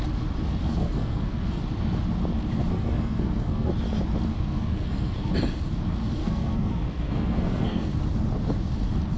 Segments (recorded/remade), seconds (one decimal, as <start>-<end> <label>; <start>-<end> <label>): 0.0-0.7 recorded; 0.7-1.6 remade; 1.6-2.7 recorded; 2.7-3.7 remade; 3.7-4.3 recorded; 4.3-5.3 remade; 5.3-6.2 recorded; 6.2-7.9 remade; 7.9-9.2 recorded